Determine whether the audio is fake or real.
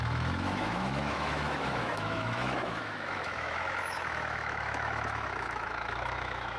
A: fake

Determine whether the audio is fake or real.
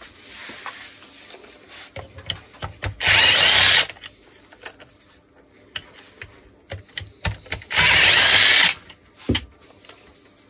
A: real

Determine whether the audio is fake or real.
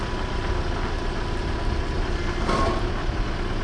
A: real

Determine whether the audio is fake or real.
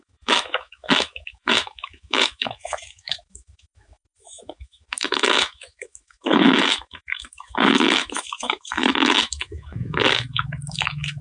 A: fake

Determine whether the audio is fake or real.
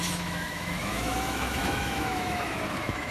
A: fake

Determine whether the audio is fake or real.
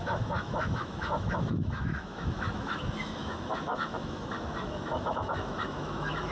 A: fake